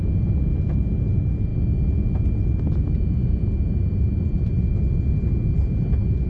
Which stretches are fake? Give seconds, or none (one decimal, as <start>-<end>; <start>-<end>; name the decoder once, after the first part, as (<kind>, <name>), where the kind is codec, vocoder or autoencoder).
none